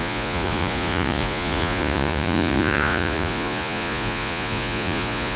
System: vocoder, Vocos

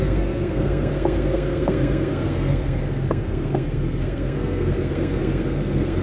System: codec, SNAC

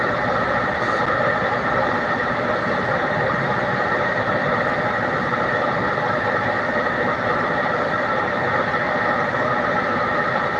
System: none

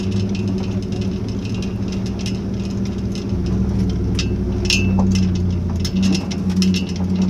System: none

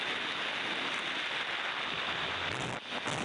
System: none